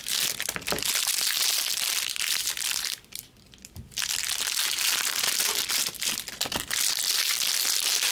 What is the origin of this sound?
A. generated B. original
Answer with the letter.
B